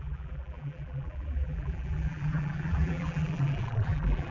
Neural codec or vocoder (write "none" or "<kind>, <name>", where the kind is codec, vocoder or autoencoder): vocoder, BigVGAN v2